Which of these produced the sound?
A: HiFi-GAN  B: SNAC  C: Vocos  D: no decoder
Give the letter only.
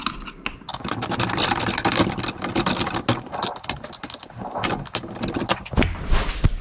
D